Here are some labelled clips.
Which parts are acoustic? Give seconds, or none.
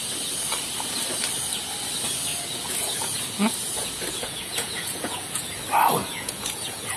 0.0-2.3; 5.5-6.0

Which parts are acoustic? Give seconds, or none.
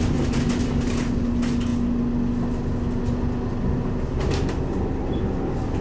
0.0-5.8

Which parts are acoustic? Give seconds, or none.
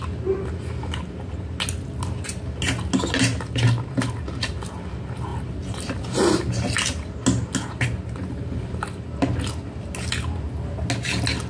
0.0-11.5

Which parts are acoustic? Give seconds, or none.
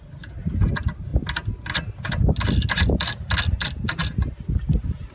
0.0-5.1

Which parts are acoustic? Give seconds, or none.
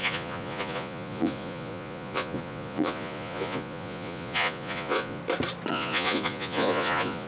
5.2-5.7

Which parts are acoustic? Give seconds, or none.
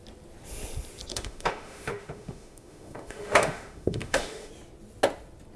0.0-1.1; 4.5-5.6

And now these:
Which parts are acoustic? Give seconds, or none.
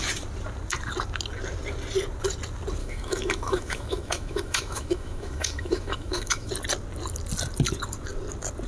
0.0-2.8; 6.5-8.7